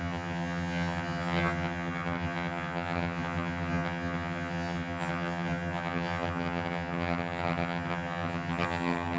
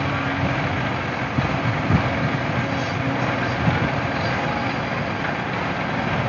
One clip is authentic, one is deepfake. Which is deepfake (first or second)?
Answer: first